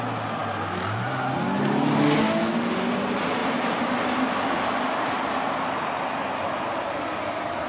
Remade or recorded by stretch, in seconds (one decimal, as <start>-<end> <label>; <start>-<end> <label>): 0.0-7.7 recorded